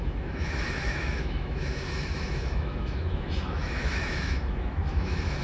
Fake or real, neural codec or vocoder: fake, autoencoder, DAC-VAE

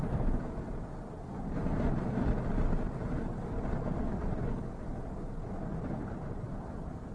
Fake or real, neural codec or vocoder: real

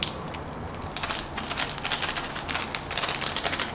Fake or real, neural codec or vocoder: real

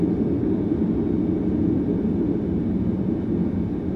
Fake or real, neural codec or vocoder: real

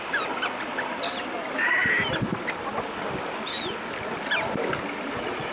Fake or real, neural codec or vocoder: real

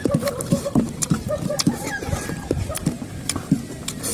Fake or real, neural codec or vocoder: fake, vocoder, BigVGAN v2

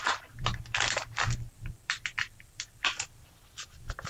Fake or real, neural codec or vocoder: fake, vocoder, BigVGAN v2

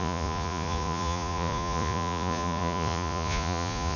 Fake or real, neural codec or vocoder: fake, vocoder, Vocos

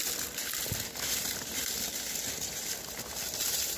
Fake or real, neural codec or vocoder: real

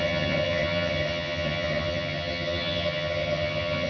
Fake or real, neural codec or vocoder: fake, vocoder, HiFi-GAN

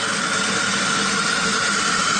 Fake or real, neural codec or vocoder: real